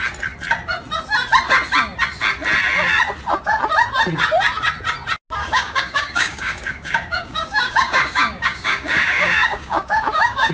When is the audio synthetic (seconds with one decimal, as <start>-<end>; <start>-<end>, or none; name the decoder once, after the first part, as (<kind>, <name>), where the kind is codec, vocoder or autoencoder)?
5.4-10.5 (codec, DAC)